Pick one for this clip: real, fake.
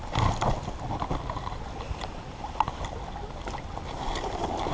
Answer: real